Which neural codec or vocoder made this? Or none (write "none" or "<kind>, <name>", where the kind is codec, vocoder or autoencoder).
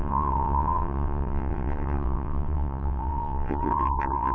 vocoder, WaveNeXt